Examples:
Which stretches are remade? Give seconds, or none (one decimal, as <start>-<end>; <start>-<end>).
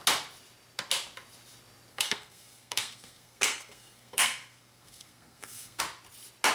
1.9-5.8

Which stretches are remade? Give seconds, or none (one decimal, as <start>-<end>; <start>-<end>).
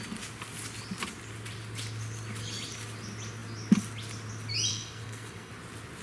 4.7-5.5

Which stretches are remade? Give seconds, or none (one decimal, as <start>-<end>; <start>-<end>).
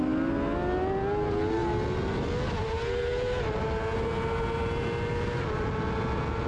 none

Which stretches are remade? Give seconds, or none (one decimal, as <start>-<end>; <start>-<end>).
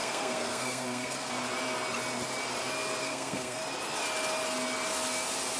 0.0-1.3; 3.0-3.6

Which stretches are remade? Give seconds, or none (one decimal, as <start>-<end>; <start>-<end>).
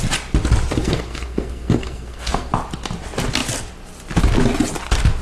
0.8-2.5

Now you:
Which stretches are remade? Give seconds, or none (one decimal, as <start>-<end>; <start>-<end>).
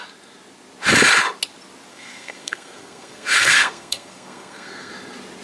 1.9-4.9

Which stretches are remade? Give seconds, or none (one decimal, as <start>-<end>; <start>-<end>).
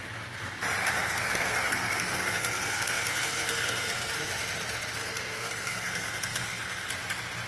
0.8-4.1; 5.0-6.9